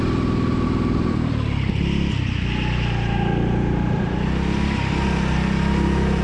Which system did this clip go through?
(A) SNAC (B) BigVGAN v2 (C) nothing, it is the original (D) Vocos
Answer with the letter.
C